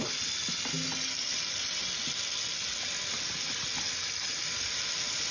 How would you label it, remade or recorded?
recorded